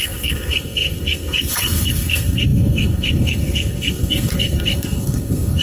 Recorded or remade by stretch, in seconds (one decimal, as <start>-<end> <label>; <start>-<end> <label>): 0.0-5.6 remade